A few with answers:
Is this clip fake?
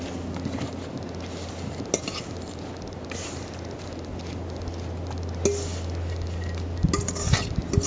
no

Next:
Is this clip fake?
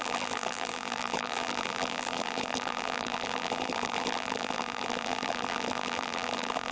yes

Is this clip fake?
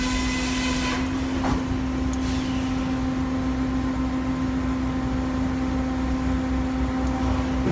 no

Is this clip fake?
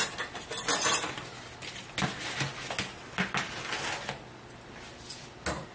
no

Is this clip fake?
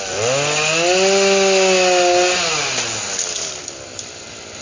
no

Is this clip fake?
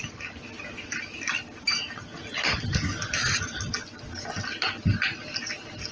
no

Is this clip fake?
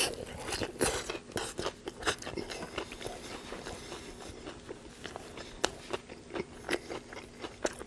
no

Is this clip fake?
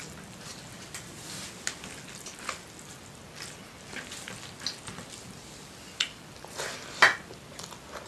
no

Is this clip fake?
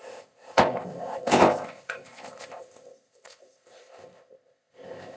yes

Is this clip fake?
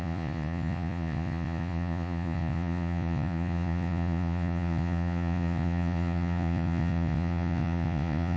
yes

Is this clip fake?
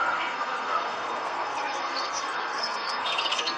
yes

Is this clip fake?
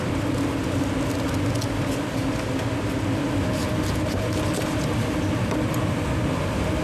no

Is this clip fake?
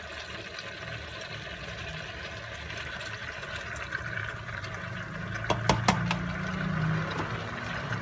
no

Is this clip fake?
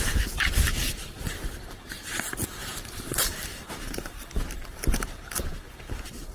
yes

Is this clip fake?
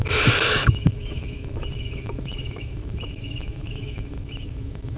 yes